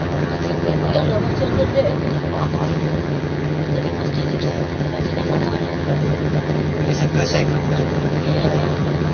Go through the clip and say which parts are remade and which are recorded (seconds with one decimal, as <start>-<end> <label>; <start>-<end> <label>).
0.0-1.1 remade; 1.1-1.9 recorded; 1.9-9.1 remade